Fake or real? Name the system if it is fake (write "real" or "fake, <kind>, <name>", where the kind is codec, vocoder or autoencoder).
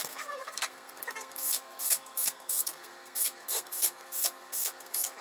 fake, codec, SNAC